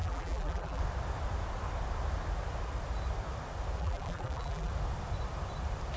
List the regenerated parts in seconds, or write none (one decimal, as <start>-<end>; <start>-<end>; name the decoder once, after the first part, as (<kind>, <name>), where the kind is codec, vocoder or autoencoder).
0.0-0.8 (vocoder, BigVGAN v2); 3.8-4.7